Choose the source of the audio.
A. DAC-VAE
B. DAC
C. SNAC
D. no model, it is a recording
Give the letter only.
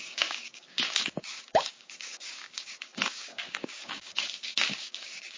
B